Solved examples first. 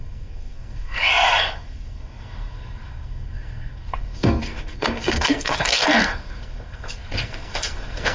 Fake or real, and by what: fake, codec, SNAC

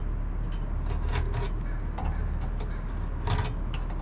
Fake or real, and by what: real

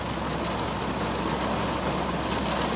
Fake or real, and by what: real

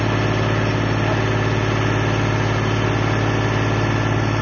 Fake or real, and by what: real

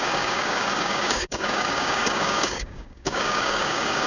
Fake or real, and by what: fake, codec, DAC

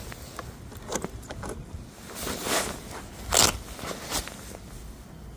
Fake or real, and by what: real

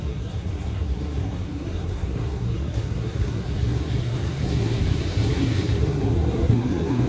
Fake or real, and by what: fake, codec, SNAC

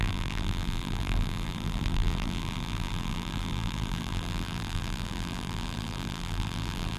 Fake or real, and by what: fake, vocoder, BigVGAN v2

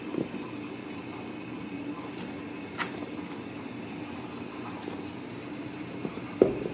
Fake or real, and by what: real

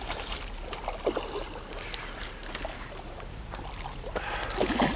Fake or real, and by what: real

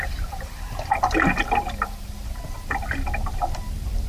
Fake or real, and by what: real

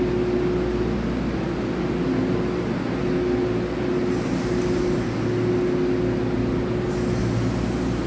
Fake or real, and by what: real